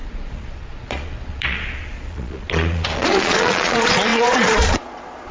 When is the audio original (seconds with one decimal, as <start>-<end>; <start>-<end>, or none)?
none